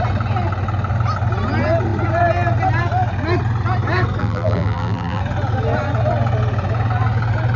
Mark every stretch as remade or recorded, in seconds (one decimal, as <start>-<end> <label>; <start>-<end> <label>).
0.0-4.2 recorded; 4.2-5.2 remade; 5.2-7.6 recorded